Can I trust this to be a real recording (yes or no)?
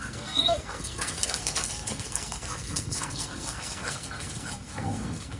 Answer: no